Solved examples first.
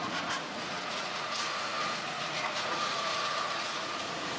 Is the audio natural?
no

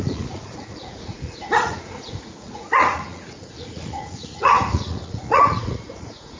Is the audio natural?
no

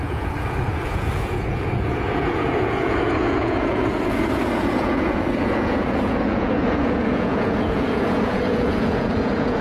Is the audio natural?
no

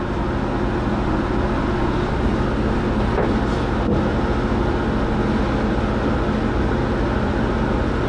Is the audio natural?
yes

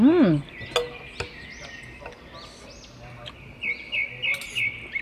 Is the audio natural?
yes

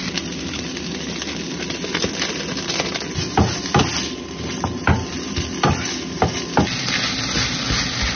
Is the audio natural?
yes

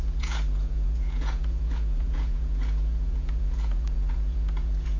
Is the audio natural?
no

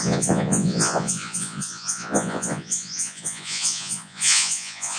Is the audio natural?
no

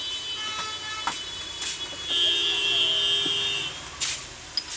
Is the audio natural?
yes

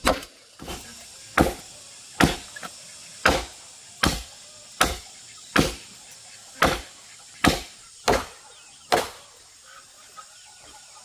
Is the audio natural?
yes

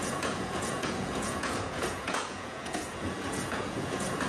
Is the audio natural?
no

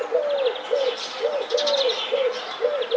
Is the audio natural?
yes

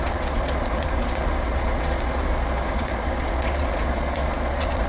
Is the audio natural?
no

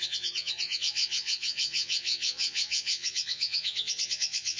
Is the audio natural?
no